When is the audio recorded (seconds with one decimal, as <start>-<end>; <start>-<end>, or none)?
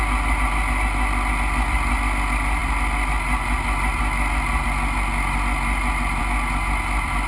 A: 0.0-7.3